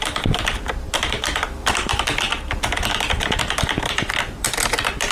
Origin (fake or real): fake